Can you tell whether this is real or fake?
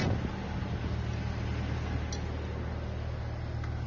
real